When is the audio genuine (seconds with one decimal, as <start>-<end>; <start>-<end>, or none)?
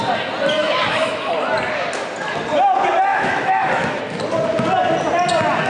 0.0-0.6; 1.3-3.1; 4.0-5.7